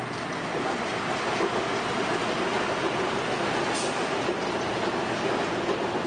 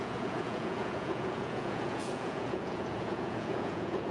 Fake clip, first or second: second